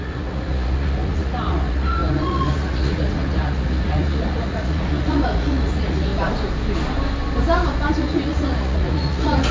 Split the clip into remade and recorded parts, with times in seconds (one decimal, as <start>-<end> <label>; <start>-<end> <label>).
0.0-6.1 remade; 6.1-7.9 recorded; 7.9-9.5 remade